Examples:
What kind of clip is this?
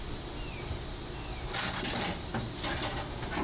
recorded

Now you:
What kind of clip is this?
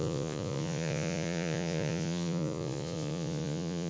remade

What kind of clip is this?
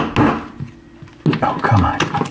recorded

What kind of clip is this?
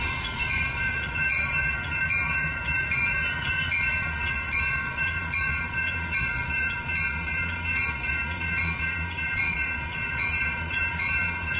remade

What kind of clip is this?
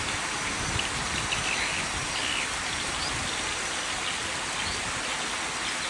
recorded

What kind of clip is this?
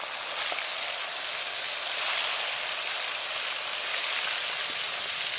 recorded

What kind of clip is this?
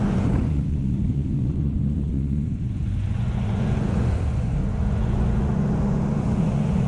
remade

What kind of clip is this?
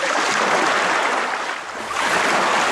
recorded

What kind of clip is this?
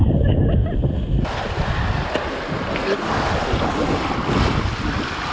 recorded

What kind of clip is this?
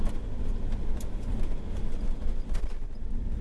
recorded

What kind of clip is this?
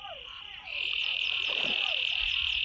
remade